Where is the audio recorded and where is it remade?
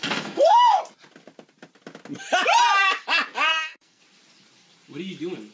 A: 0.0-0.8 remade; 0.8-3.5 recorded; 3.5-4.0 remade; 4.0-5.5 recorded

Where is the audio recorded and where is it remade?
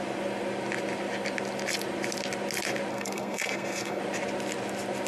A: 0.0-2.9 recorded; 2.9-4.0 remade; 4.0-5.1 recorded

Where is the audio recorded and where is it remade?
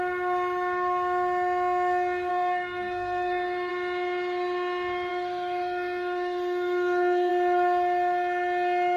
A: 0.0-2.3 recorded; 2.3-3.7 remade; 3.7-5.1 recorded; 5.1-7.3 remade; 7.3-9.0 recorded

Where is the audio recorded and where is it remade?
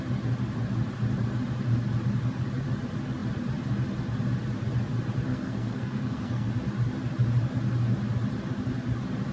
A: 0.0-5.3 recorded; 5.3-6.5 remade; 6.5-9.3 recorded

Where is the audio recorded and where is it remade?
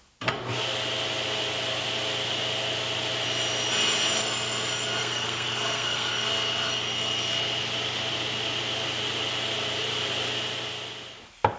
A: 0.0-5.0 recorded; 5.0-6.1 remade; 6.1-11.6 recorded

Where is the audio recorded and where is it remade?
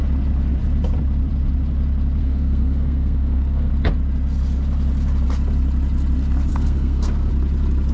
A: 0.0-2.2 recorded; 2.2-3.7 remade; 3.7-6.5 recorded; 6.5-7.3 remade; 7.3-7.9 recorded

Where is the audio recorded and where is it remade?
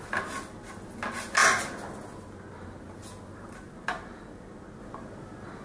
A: 0.0-5.6 recorded